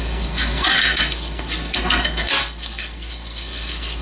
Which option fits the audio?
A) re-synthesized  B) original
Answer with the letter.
A